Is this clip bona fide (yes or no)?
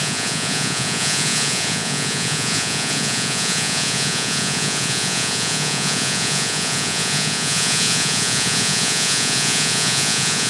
no